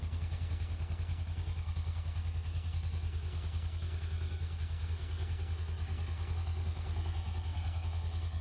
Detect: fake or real fake